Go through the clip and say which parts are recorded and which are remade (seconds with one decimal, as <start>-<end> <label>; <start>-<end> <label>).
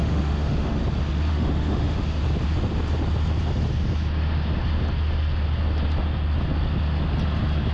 0.0-0.8 remade; 0.8-1.3 recorded; 1.3-2.2 remade; 2.2-7.7 recorded